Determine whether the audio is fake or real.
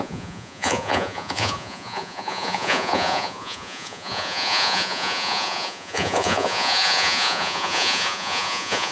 fake